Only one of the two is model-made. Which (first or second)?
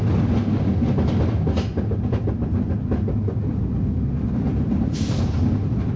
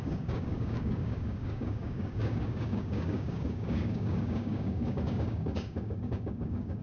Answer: second